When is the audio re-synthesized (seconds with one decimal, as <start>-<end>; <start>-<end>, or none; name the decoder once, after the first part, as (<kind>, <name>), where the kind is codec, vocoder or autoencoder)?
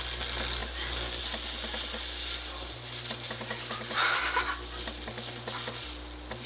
none